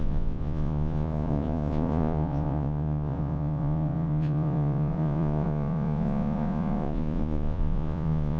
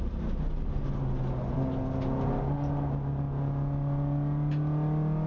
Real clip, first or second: second